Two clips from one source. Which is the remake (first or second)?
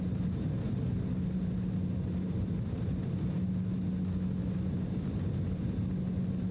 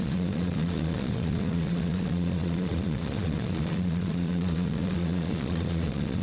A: second